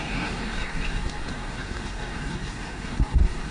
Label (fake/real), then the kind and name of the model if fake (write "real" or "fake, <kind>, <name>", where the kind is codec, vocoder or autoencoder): fake, codec, SNAC